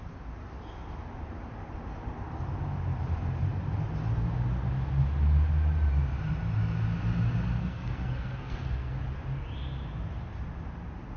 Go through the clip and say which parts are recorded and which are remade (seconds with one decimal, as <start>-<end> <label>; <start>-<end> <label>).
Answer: 0.0-7.6 recorded; 7.6-9.0 remade; 9.0-11.2 recorded